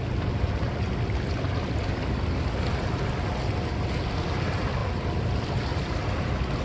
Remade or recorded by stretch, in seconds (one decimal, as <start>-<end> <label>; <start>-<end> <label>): 0.0-6.6 recorded